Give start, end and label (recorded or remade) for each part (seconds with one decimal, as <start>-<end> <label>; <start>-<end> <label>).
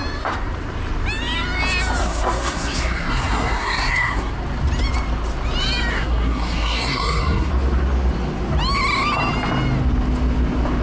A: 0.0-2.0 recorded; 2.0-4.3 remade; 4.3-5.9 recorded; 5.9-7.5 remade; 7.5-10.8 recorded